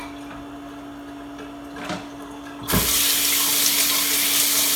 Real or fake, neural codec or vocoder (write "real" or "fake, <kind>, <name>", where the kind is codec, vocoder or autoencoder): real